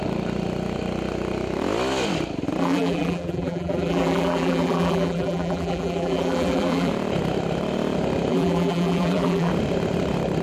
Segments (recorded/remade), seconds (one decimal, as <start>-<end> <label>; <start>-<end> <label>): 0.0-2.6 recorded; 2.6-6.9 remade; 6.9-8.3 recorded; 8.3-9.5 remade; 9.5-10.4 recorded